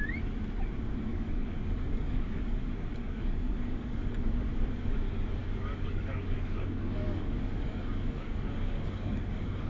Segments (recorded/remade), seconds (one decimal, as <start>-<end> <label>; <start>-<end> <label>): 0.0-1.1 recorded; 1.1-4.3 remade; 4.3-5.4 recorded; 5.4-9.7 remade